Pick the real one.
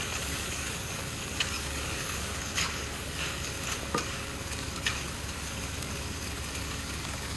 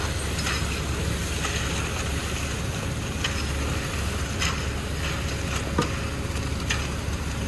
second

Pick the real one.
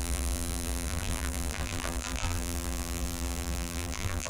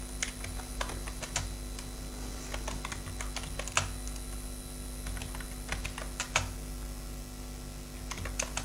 second